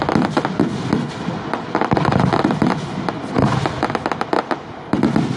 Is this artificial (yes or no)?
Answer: no